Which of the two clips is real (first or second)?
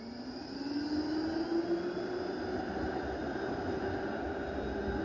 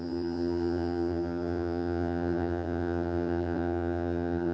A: first